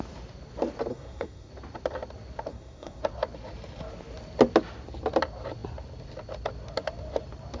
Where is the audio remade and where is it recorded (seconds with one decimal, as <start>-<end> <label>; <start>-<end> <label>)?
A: 0.0-0.9 recorded; 0.9-1.5 remade; 1.5-2.5 recorded; 2.5-3.0 remade; 3.0-7.6 recorded